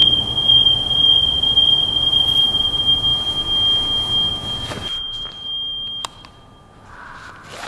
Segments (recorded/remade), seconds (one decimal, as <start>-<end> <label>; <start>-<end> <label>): 0.0-4.3 recorded; 4.3-6.6 remade; 6.6-7.7 recorded